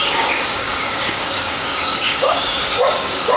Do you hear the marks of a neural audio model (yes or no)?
yes